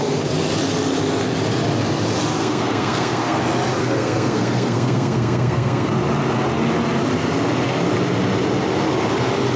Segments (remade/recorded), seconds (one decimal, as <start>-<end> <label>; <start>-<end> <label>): 0.0-2.4 recorded; 2.4-3.4 remade; 3.4-3.8 recorded; 3.8-5.9 remade; 5.9-9.6 recorded